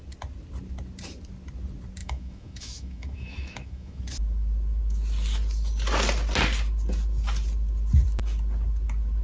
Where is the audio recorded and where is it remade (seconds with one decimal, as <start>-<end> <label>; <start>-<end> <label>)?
0.0-2.0 recorded; 2.0-4.0 remade; 4.0-9.2 recorded